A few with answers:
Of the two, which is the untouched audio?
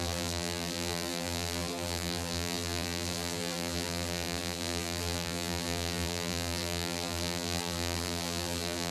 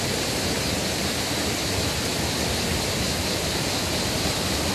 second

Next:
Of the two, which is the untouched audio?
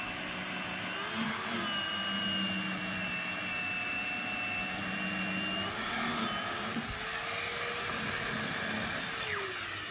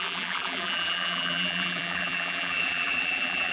first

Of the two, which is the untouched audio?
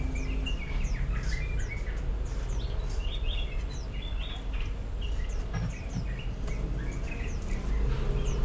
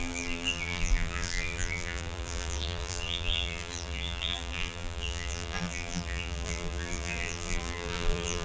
first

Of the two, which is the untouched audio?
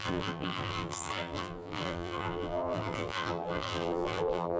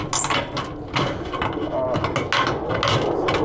second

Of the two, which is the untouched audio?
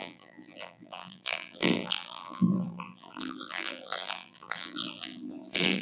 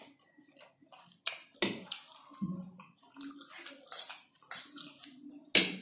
second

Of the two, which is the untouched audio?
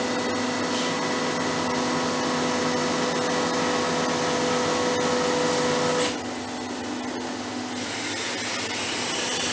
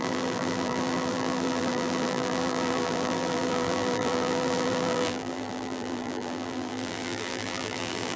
first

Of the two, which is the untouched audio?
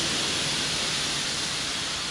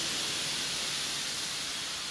second